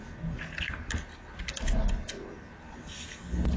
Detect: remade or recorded recorded